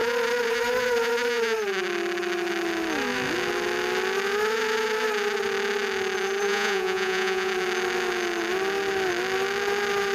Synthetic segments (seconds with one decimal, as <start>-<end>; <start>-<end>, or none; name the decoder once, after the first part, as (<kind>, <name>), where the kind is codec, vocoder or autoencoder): 6.5-7.5 (vocoder, Vocos)